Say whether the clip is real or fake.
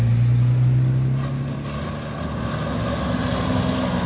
real